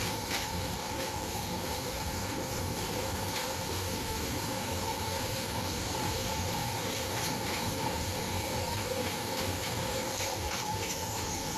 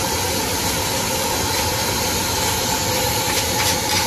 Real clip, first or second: second